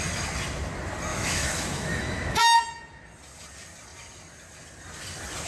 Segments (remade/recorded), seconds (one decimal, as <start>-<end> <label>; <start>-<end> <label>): 0.0-1.1 recorded; 1.1-2.4 remade; 2.4-5.5 recorded